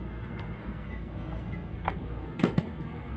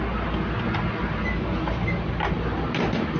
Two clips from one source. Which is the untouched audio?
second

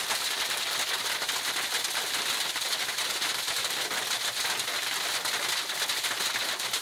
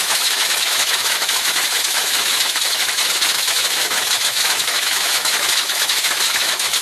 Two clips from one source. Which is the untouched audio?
first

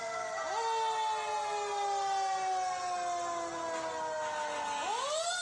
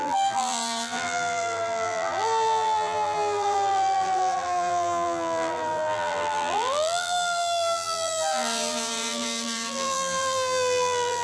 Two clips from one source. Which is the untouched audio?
first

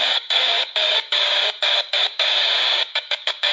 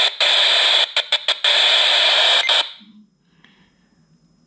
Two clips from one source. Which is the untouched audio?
second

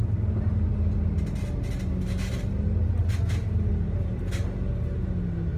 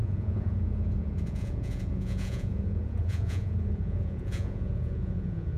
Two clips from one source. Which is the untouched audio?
first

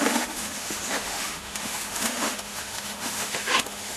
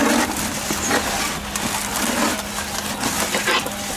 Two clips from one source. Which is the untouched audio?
second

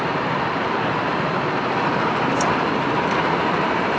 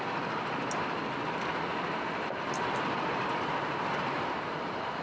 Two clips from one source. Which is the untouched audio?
second